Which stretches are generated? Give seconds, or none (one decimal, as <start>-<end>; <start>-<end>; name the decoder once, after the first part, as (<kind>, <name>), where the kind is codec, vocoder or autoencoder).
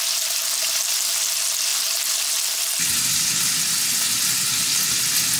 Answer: none